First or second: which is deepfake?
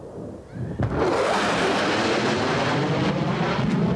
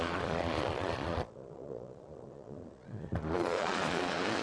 second